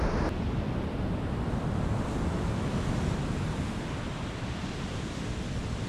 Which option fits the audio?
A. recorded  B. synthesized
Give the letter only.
A